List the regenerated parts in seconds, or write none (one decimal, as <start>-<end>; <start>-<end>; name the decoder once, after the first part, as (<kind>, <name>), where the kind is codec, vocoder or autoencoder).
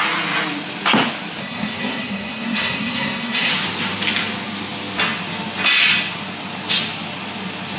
1.4-3.5 (codec, SNAC)